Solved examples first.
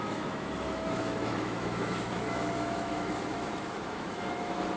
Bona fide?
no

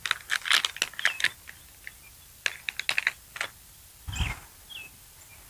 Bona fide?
yes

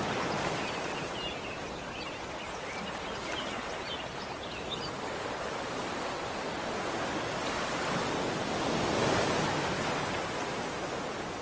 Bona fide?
yes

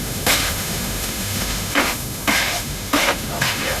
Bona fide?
no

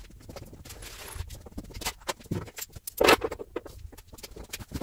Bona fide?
yes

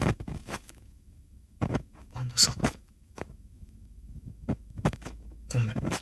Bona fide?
no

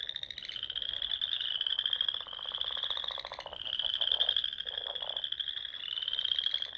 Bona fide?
yes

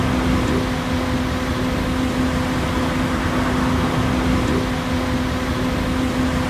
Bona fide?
yes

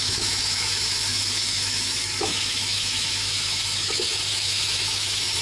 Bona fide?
no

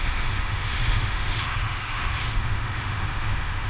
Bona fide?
no